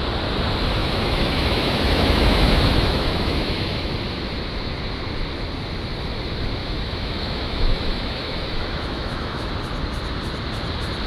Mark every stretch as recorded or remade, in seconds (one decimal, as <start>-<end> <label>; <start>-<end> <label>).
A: 0.0-0.8 recorded; 0.8-3.9 remade; 3.9-6.6 recorded; 6.6-9.5 remade; 9.5-11.1 recorded